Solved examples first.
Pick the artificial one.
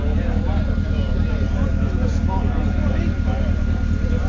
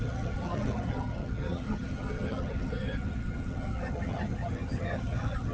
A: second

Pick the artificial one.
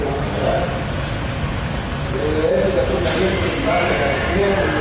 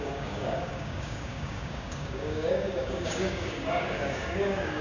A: second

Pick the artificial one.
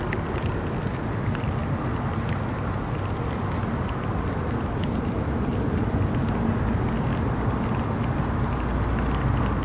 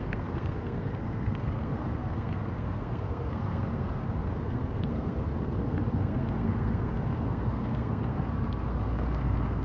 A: second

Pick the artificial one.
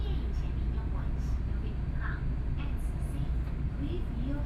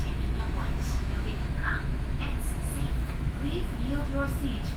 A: second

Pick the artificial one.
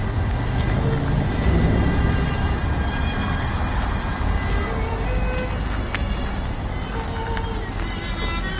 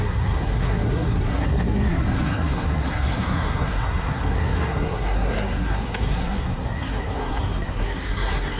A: second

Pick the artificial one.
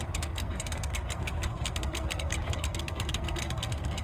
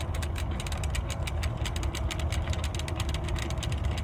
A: first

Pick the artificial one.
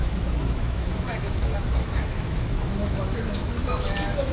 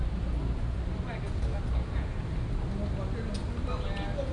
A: first